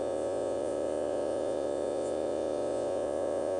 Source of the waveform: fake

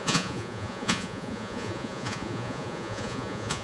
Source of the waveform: fake